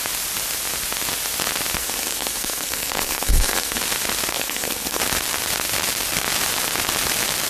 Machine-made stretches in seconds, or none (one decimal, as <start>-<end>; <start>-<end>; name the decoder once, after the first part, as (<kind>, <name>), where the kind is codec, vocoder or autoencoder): 1.8-3.8 (codec, SNAC); 4.3-5.0